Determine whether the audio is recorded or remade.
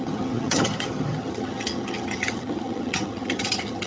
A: remade